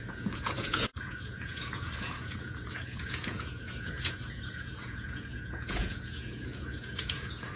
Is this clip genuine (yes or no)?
no